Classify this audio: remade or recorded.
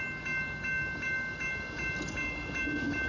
recorded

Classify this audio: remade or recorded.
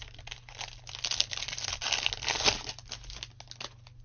recorded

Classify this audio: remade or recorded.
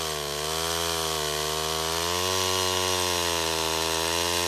recorded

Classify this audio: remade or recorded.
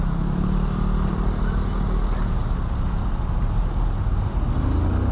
recorded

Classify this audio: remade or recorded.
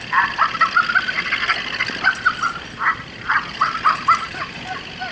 recorded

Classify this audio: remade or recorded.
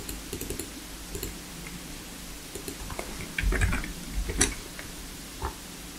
remade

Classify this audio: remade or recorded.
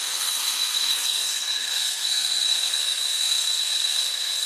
remade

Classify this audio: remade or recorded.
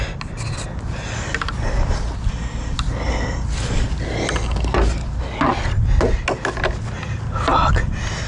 recorded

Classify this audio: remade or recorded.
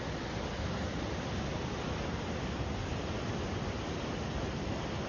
recorded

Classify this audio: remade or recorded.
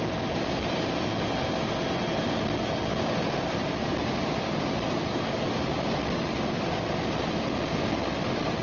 recorded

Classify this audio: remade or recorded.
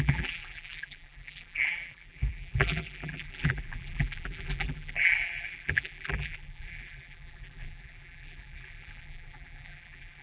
remade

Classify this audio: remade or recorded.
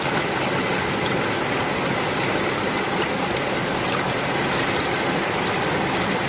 recorded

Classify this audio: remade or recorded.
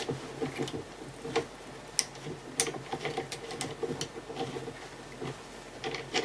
recorded